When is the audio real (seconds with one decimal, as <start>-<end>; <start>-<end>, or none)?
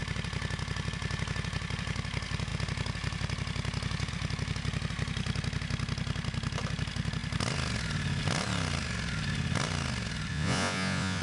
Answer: 0.0-10.3